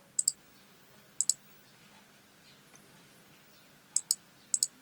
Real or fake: real